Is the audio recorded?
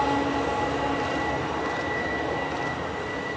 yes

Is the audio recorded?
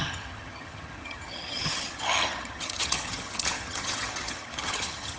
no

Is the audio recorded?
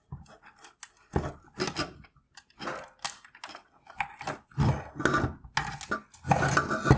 yes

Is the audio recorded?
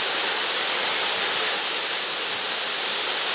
yes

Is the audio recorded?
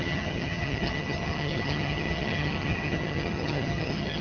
no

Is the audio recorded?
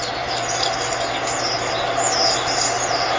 yes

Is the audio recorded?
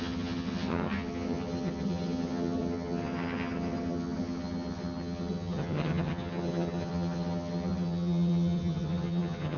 no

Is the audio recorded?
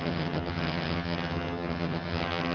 no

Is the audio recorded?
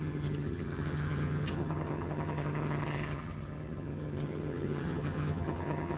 no